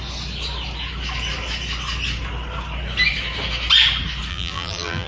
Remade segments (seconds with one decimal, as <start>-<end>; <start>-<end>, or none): 4.3-5.1